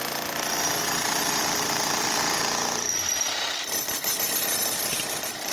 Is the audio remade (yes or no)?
no